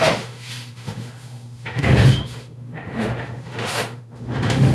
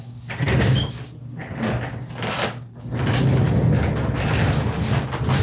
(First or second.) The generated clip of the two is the first